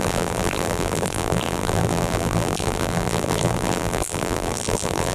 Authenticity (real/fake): fake